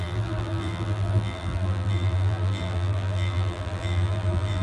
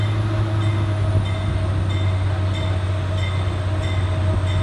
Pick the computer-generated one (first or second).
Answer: first